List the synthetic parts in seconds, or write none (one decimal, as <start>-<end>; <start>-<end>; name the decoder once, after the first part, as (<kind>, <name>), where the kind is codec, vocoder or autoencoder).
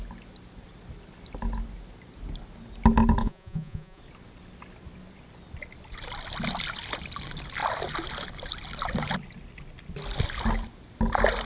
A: 3.2-4.0 (vocoder, Vocos)